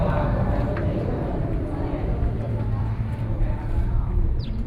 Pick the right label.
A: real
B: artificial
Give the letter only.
B